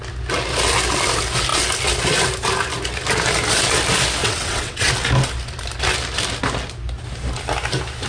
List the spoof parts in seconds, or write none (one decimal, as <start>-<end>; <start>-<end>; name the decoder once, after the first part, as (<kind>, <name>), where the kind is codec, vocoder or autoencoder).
4.2-4.9 (vocoder, WaveNeXt)